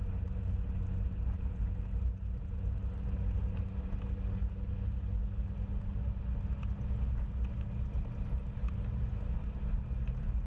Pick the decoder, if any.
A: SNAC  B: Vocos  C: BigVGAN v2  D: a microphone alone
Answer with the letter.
D